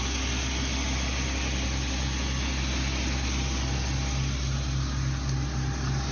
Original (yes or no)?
yes